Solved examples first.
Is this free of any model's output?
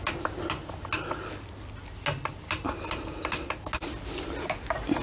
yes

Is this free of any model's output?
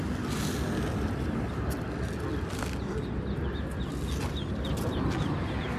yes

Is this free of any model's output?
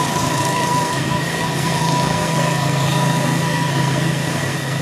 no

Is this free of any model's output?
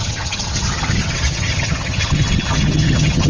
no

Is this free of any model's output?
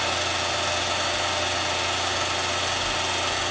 yes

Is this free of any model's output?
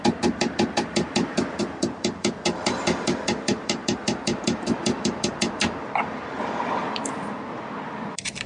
no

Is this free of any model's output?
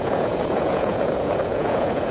no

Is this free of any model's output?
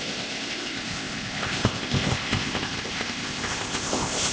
no